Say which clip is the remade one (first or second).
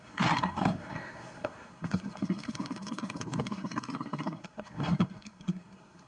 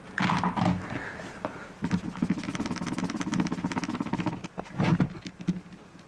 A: first